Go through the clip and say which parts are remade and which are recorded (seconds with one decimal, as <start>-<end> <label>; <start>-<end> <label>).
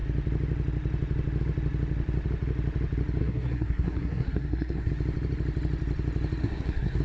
0.0-3.2 recorded; 3.2-4.9 remade; 4.9-6.4 recorded; 6.4-7.0 remade